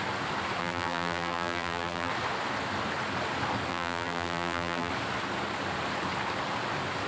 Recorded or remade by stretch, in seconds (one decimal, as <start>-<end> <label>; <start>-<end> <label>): 0.0-0.6 recorded; 0.6-2.1 remade; 2.1-3.7 recorded; 3.7-4.9 remade; 4.9-7.1 recorded

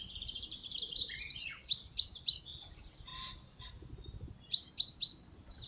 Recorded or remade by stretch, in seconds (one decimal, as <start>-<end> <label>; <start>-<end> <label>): 0.0-3.1 remade; 3.1-5.2 recorded; 5.2-5.7 remade

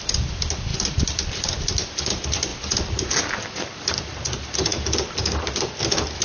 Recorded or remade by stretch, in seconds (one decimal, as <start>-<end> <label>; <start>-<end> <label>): 0.0-4.7 remade; 4.7-5.5 recorded; 5.5-6.2 remade

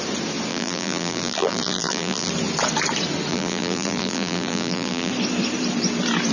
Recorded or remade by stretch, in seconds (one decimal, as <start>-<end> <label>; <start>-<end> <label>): 0.0-0.5 recorded; 0.5-2.3 remade; 2.3-3.3 recorded; 3.3-5.1 remade; 5.1-6.3 recorded